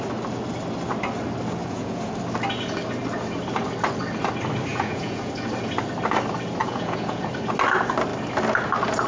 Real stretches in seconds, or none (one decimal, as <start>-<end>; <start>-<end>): 0.0-1.6; 2.1-4.7; 5.3-6.6; 7.3-9.1